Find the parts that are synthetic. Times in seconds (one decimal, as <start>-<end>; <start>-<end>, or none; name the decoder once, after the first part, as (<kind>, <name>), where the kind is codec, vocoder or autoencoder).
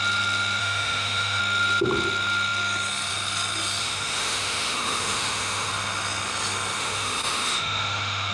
0.6-1.4 (autoencoder, DAC-VAE); 3.8-5.7; 6.8-8.3